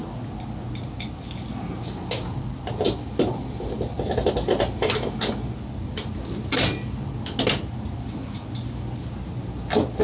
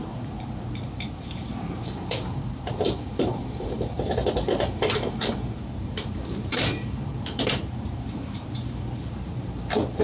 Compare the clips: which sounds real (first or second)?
first